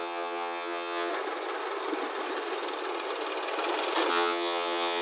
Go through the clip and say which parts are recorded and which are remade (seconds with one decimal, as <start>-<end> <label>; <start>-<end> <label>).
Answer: 0.0-1.1 remade; 1.1-4.1 recorded; 4.1-5.0 remade